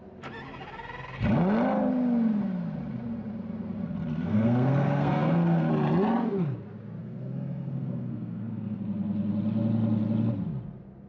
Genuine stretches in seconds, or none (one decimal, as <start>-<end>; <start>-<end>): 0.0-4.1; 5.7-7.0; 8.8-11.1